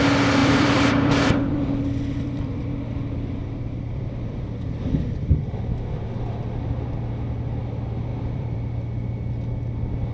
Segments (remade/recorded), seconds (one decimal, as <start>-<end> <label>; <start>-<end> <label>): 0.0-0.4 recorded; 0.4-5.7 remade; 5.7-8.1 recorded; 8.1-8.6 remade; 8.6-10.1 recorded